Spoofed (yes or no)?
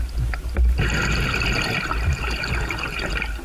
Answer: no